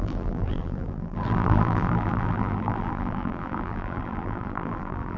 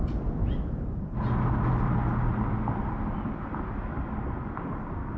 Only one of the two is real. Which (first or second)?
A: second